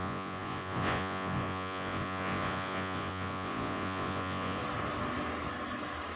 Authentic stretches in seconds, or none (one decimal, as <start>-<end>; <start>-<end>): 4.6-6.2